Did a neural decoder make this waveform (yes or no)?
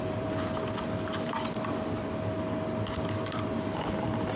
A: yes